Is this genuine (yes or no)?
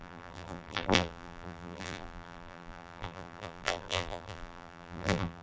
no